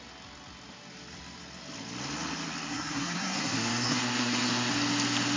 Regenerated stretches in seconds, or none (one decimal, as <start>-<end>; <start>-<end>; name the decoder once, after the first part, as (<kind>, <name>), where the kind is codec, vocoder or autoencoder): 2.7-4.7 (codec, SNAC)